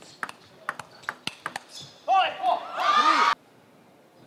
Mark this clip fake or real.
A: real